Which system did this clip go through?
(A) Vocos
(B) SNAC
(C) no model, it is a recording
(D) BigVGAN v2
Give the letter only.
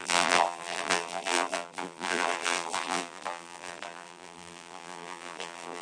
D